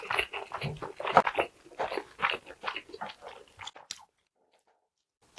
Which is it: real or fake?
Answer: real